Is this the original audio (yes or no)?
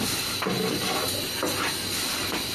yes